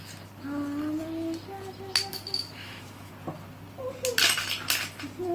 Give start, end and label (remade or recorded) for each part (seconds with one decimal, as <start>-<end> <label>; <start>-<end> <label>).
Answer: 0.0-2.1 recorded; 2.1-3.1 remade; 3.1-5.3 recorded